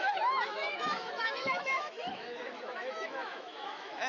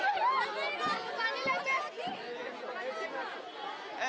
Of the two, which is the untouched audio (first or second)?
second